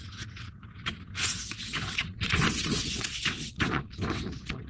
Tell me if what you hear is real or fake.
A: fake